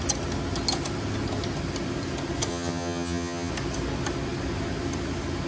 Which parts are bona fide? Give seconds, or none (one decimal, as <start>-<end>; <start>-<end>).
0.0-2.5; 3.5-5.5